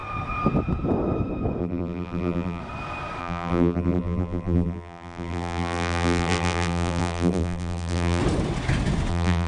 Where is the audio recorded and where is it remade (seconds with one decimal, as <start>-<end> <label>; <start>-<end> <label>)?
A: 0.0-1.6 recorded; 1.6-2.6 remade; 2.6-3.2 recorded; 3.2-8.2 remade; 8.2-9.1 recorded; 9.1-9.5 remade

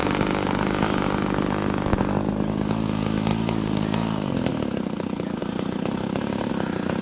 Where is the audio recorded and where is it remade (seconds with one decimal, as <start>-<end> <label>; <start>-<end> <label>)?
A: 0.0-3.3 recorded; 3.3-4.5 remade; 4.5-5.4 recorded; 5.4-6.5 remade; 6.5-7.0 recorded

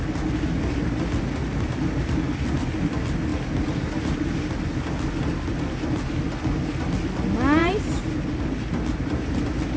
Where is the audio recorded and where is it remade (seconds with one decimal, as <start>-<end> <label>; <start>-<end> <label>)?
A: 0.0-7.6 recorded; 7.6-8.4 remade; 8.4-9.8 recorded

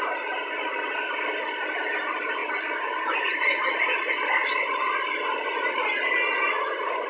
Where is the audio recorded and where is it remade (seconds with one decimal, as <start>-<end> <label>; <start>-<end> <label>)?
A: 0.0-4.4 remade; 4.4-5.7 recorded; 5.7-7.1 remade